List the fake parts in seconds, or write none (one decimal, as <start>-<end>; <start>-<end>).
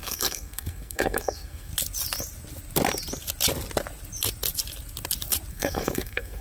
0.0-1.7; 5.5-6.4